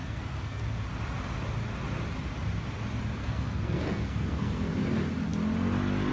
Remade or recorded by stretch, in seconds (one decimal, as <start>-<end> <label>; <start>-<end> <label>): 0.0-0.6 remade; 0.6-3.2 recorded; 3.2-4.7 remade; 4.7-6.1 recorded